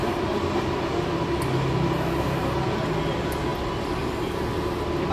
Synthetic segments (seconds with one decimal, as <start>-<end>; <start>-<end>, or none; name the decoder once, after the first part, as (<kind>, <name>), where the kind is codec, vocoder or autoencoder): none

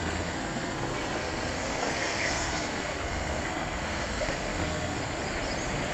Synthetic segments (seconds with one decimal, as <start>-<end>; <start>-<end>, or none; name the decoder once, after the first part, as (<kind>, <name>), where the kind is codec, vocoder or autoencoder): 0.0-5.0 (codec, SNAC)

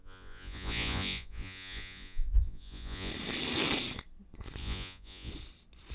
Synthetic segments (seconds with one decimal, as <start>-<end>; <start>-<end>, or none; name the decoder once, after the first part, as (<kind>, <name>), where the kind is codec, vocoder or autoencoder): 0.0-3.1 (vocoder, Vocos); 4.6-5.3

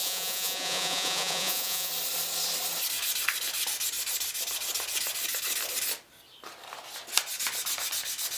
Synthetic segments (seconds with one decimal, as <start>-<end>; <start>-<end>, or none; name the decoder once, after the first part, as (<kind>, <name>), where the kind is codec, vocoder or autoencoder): 0.0-1.9 (vocoder, Vocos)

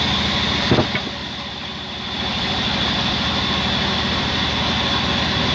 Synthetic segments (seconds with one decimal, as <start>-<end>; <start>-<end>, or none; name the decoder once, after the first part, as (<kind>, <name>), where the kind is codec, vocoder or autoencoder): 1.2-4.5 (vocoder, BigVGAN v2)